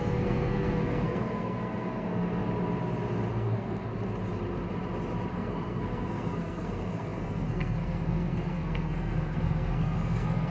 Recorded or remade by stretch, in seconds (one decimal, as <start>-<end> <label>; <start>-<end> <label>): 0.0-2.4 remade; 2.4-3.3 recorded; 3.3-3.9 remade; 3.9-5.3 recorded; 5.3-10.5 remade